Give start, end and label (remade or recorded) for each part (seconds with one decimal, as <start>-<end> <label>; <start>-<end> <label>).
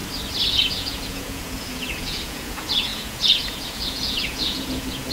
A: 0.0-0.5 recorded; 0.5-5.1 remade